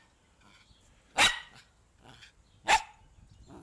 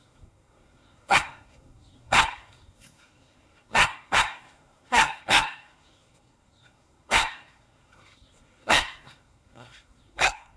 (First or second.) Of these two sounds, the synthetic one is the second